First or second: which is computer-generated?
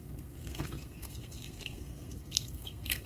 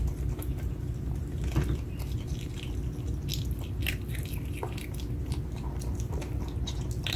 first